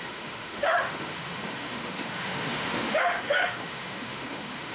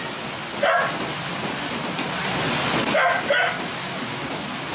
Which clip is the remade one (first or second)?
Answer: first